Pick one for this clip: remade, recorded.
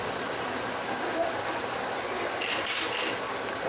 recorded